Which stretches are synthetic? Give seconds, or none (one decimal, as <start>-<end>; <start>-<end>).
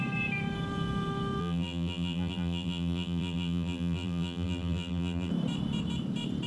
1.4-5.3